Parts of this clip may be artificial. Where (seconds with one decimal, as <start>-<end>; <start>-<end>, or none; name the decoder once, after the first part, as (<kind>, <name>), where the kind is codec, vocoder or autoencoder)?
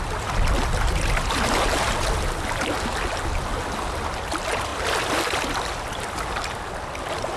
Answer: none